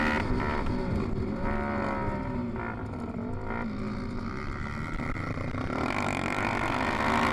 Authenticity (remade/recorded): recorded